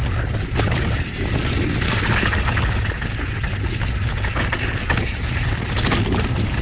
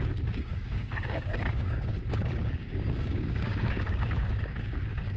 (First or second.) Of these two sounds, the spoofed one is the second